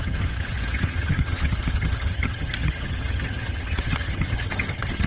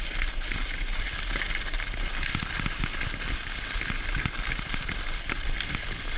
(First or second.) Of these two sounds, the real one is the second